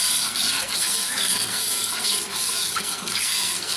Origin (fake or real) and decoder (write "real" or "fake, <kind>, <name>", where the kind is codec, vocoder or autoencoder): fake, codec, SNAC